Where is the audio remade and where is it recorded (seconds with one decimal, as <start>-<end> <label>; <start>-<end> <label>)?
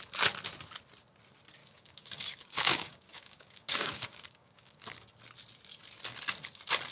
0.0-1.6 recorded; 1.6-4.8 remade; 4.8-6.9 recorded